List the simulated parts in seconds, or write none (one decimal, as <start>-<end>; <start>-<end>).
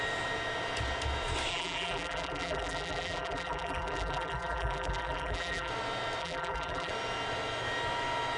1.5-5.7; 6.2-6.9